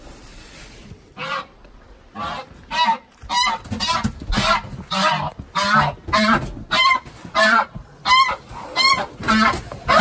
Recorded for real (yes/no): yes